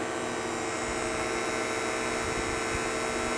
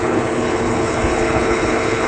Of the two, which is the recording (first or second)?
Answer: first